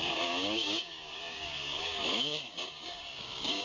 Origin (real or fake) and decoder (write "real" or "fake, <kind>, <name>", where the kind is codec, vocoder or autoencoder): fake, codec, DAC